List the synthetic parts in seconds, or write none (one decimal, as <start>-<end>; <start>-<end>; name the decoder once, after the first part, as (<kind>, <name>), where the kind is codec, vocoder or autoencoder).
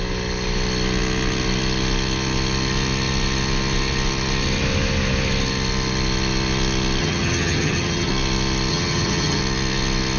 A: 7.0-8.1 (vocoder, HiFi-GAN); 8.7-9.4